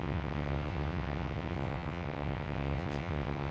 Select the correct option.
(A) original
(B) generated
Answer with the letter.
B